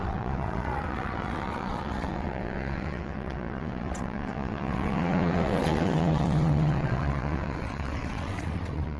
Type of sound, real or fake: fake